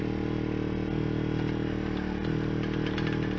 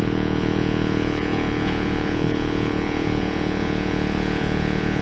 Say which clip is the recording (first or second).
first